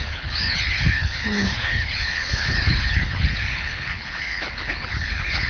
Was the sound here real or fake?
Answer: fake